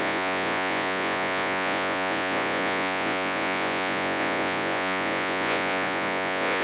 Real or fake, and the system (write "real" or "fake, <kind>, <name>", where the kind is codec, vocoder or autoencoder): fake, vocoder, Vocos